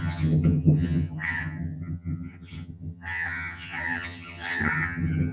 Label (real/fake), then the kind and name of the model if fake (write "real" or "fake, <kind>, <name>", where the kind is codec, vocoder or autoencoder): fake, vocoder, HiFi-GAN